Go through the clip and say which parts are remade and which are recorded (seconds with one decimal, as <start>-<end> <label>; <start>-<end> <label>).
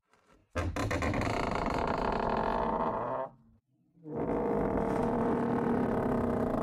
0.0-5.0 recorded; 5.0-6.6 remade